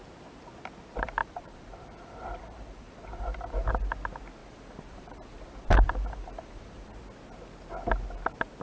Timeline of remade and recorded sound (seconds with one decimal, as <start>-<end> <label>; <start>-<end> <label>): 0.0-1.2 recorded; 1.2-3.5 remade; 3.5-4.4 recorded; 4.4-6.9 remade; 6.9-8.6 recorded